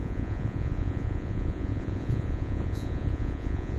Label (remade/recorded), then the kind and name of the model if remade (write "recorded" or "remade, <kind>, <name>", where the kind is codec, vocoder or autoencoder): remade, vocoder, Vocos